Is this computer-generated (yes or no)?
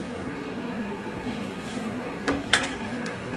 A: yes